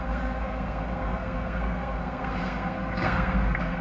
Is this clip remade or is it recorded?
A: remade